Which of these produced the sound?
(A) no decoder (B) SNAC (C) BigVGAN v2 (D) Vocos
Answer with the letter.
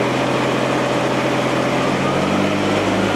A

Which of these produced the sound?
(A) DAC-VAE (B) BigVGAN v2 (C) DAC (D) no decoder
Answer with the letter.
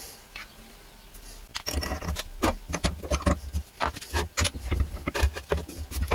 D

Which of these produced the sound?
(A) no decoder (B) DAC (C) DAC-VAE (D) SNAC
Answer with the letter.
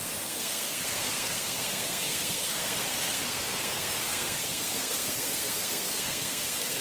D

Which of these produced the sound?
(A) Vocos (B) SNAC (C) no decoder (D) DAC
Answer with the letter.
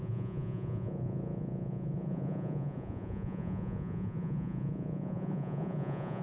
A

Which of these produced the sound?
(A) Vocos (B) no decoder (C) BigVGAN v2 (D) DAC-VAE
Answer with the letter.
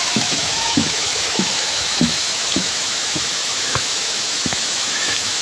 D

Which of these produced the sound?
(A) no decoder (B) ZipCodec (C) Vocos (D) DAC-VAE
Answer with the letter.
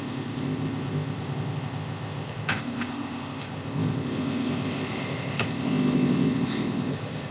B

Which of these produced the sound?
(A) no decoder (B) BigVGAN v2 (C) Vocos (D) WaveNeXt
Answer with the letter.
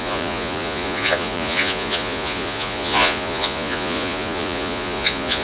C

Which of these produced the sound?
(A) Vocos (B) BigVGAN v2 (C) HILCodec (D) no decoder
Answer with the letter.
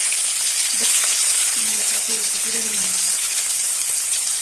C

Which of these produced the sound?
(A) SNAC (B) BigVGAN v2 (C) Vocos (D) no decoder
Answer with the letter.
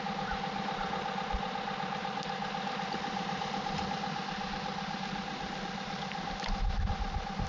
D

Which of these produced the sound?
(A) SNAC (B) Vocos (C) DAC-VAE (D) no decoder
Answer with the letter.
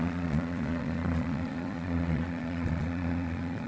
B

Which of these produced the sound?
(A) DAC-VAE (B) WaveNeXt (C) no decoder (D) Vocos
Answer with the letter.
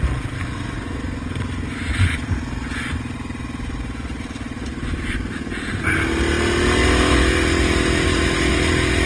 C